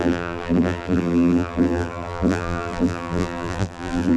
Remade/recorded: remade